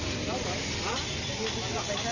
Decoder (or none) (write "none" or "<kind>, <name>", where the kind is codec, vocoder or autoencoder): none